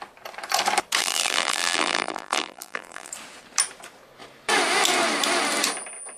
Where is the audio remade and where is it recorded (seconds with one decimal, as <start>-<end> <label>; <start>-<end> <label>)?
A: 0.0-1.0 recorded; 1.0-3.1 remade; 3.1-6.2 recorded